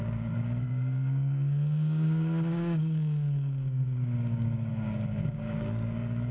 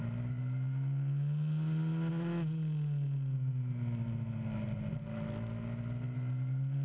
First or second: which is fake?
first